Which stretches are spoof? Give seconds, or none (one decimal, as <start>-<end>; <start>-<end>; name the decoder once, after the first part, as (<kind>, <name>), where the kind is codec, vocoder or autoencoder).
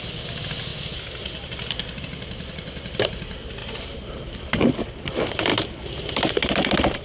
3.6-4.7 (vocoder, BigVGAN v2)